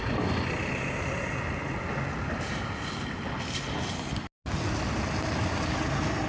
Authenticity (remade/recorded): recorded